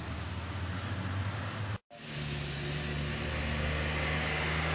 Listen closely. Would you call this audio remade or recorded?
recorded